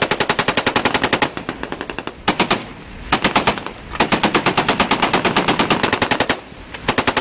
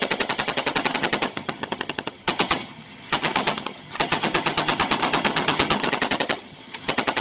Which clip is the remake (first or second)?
second